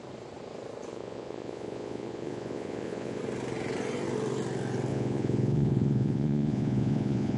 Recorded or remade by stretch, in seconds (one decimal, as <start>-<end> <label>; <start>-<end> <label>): 0.0-0.9 recorded; 0.9-3.2 remade; 3.2-4.9 recorded; 4.9-7.4 remade